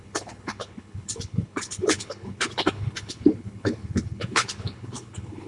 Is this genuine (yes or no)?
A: no